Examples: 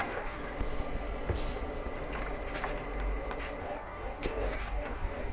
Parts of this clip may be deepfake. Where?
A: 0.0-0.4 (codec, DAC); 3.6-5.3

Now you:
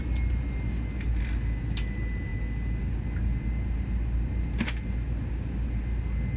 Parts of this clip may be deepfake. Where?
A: none

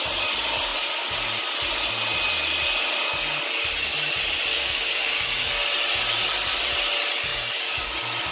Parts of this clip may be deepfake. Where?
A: 4.5-5.7 (codec, DAC); 7.3-7.9

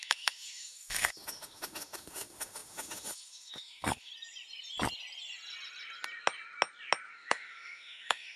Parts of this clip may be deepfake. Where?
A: 0.0-4.1 (autoencoder, DAC-VAE); 7.1-8.4

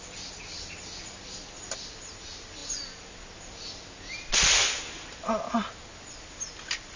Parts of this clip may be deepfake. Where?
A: none

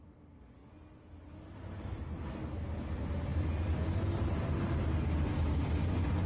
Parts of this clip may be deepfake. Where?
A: none